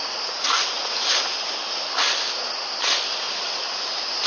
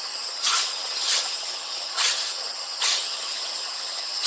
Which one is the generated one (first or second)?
second